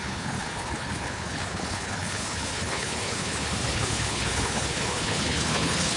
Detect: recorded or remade remade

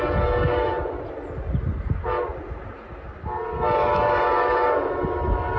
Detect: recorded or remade recorded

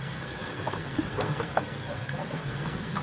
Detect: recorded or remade remade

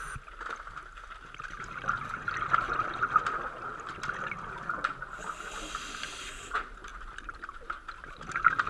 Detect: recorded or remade recorded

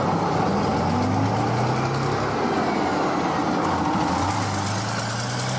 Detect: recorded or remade recorded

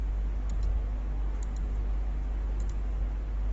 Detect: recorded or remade recorded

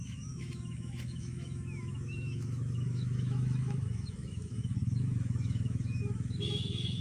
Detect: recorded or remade remade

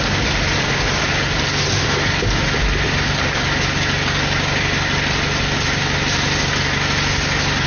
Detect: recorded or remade recorded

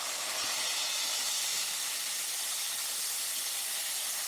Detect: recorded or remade recorded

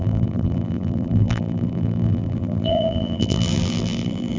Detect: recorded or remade remade